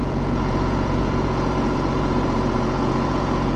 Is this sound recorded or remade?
remade